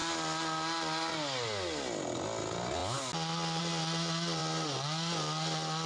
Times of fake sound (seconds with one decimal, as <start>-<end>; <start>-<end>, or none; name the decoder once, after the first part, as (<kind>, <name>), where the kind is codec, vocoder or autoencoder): none